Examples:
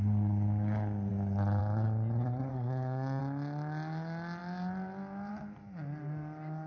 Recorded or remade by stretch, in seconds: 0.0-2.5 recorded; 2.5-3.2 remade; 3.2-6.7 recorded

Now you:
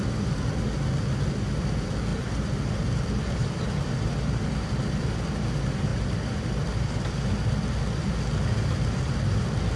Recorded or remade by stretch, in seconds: 0.0-2.1 recorded; 2.1-5.0 remade; 5.0-5.9 recorded; 5.9-7.2 remade; 7.2-9.8 recorded

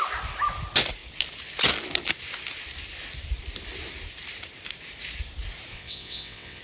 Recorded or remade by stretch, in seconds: 0.0-5.7 recorded; 5.7-6.6 remade

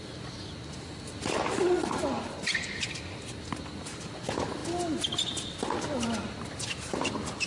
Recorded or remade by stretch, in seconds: 0.0-7.5 recorded

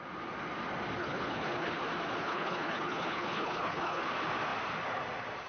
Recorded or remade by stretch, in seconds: 0.0-1.0 recorded; 1.0-1.8 remade; 1.8-2.2 recorded; 2.2-4.0 remade; 4.0-5.5 recorded